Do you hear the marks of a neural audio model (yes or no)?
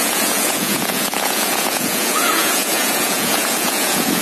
yes